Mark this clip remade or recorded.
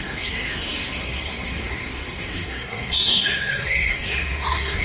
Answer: remade